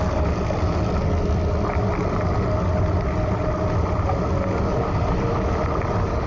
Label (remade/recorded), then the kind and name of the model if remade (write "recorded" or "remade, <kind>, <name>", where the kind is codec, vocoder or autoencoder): recorded